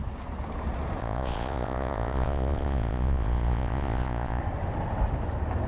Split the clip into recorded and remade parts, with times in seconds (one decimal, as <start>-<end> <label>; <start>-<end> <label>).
0.0-1.0 recorded; 1.0-4.4 remade; 4.4-5.7 recorded